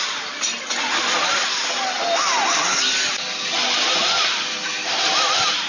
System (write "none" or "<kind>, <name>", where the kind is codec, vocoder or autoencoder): none